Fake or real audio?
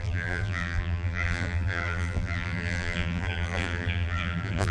fake